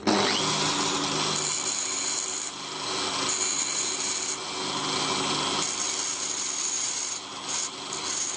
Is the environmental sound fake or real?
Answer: real